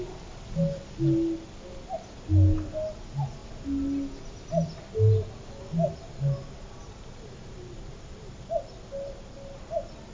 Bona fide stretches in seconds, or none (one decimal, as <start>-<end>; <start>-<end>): 0.0-10.1